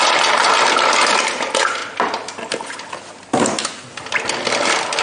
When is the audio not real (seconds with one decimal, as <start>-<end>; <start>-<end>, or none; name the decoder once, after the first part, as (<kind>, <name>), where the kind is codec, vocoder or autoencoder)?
none